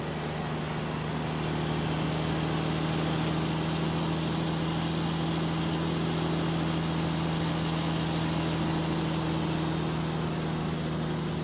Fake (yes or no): no